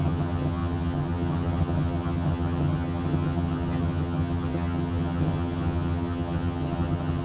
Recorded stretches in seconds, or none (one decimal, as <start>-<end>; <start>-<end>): none